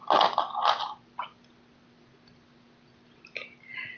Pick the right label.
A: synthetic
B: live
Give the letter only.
B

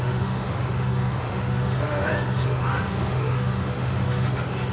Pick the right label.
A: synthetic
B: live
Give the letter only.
A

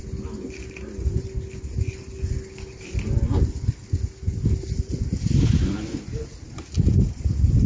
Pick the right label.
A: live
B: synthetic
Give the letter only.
A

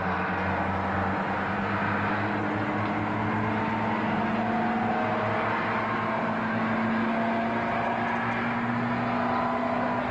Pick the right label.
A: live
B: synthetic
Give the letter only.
A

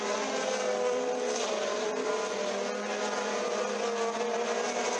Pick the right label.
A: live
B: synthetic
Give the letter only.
A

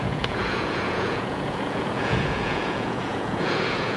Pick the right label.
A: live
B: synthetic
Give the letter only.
B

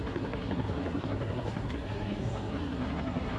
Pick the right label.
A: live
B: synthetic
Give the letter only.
B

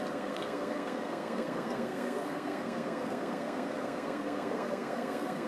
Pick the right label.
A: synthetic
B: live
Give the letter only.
A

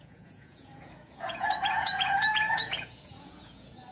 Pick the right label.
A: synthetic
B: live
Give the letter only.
A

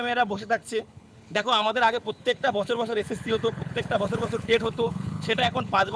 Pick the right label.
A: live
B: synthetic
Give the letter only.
B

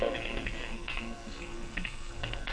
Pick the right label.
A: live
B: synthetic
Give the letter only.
B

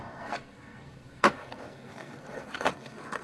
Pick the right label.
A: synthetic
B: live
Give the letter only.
A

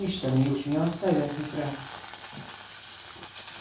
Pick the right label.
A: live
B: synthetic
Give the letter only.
A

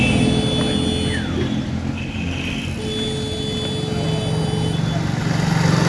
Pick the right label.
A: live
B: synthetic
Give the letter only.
A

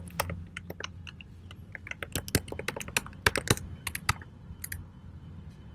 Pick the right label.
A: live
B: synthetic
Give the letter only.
A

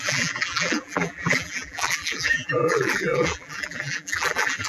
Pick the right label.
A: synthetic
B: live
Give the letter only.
A